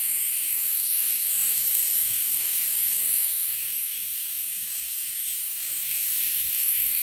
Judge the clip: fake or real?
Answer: fake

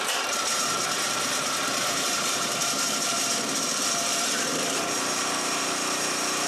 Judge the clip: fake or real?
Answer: fake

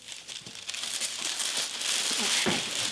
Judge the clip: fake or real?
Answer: real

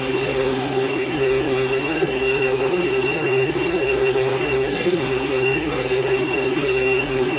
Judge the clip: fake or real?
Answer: fake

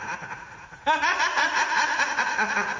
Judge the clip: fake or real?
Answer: fake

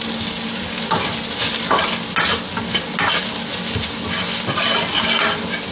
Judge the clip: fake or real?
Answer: real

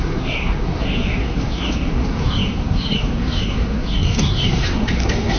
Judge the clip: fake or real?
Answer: fake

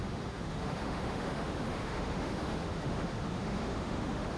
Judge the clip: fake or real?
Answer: fake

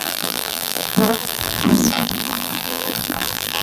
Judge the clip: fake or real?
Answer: fake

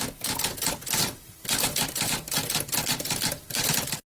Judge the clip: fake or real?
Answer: real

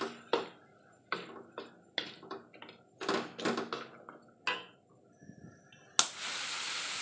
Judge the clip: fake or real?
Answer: real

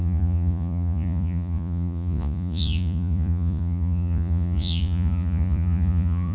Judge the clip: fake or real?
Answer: fake